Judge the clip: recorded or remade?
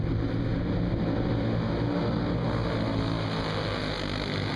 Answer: recorded